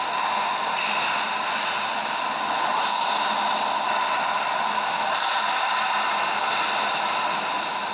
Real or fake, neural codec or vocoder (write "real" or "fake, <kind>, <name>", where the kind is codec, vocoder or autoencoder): real